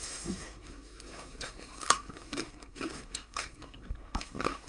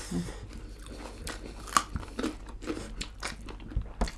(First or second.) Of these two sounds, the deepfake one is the first